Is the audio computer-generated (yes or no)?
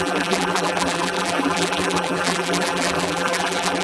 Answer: yes